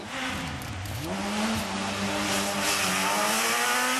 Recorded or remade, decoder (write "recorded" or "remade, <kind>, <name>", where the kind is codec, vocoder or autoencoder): recorded